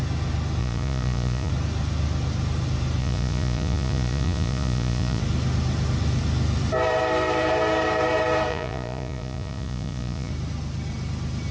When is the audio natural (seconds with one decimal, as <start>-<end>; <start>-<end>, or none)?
0.0-0.6; 1.5-3.0; 5.2-8.5; 10.3-11.5